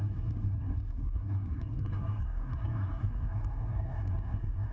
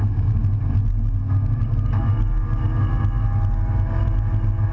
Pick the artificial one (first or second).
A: first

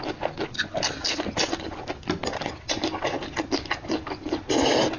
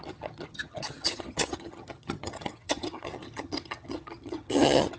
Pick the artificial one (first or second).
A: second